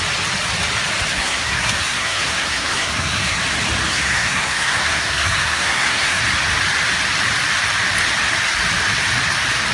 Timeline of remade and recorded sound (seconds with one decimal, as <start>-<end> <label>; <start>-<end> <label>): 0.0-1.1 recorded; 1.1-3.4 remade; 3.4-3.9 recorded; 3.9-6.2 remade; 6.2-9.7 recorded